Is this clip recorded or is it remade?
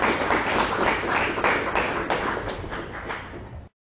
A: recorded